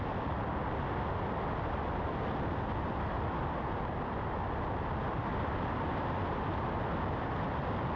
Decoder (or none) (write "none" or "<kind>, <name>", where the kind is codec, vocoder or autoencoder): none